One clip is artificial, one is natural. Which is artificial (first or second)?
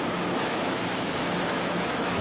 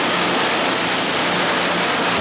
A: first